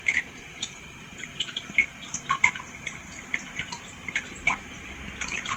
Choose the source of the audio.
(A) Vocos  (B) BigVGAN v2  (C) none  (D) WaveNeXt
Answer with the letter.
B